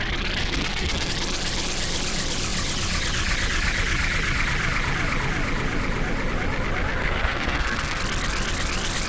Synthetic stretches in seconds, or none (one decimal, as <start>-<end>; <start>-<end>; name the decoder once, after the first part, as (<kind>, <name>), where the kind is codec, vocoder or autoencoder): 0.4-1.1 (codec, SNAC); 7.0-8.0